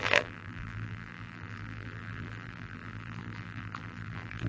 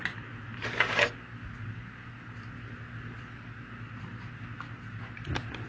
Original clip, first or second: second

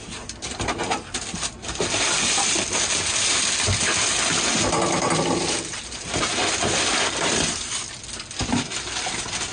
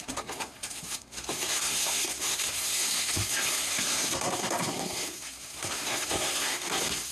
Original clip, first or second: first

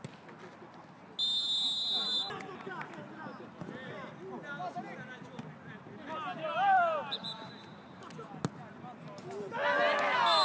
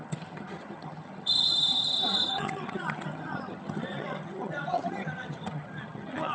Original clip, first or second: first